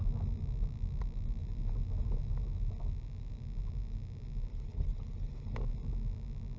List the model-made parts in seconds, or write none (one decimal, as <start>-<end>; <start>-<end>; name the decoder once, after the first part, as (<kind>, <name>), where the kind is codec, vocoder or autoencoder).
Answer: 4.5-5.6 (codec, HILCodec)